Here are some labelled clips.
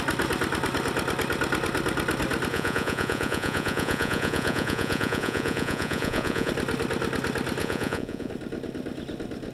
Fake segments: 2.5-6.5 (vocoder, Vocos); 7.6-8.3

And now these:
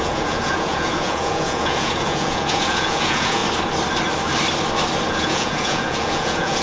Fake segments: 0.0-3.4 (vocoder, Vocos); 5.1-6.6

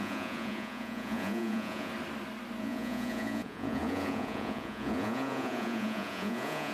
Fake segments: 0.0-1.9 (vocoder, Vocos); 2.6-6.7

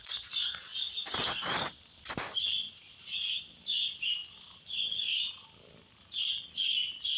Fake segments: none

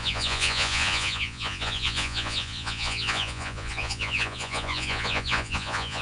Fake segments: 0.0-6.0 (vocoder, Vocos)

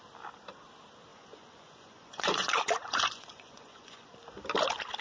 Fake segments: 1.1-4.1 (vocoder, Vocos)